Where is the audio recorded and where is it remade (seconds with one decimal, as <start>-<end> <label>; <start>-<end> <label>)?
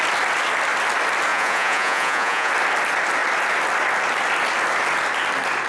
0.0-1.3 recorded; 1.3-2.5 remade; 2.5-5.7 recorded